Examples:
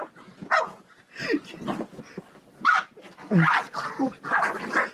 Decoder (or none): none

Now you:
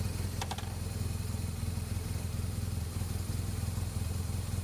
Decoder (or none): vocoder, BigVGAN v2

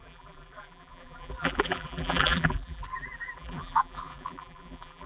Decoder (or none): vocoder, BigVGAN v2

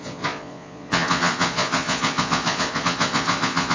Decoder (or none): vocoder, Vocos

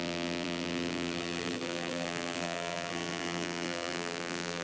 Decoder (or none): vocoder, BigVGAN v2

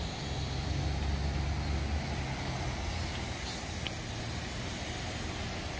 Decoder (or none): none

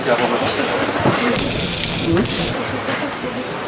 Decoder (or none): none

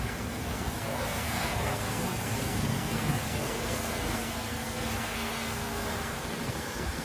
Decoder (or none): codec, SNAC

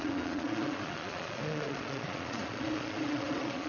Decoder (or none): vocoder, Vocos